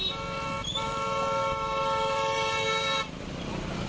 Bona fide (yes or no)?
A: yes